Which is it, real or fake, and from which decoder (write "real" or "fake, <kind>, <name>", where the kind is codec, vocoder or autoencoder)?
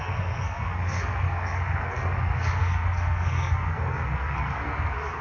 fake, codec, SNAC